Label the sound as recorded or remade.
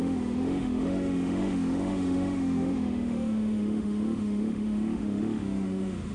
remade